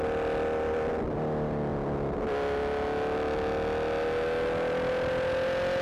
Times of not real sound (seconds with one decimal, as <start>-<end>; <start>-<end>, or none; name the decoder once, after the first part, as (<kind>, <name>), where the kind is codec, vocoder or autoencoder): none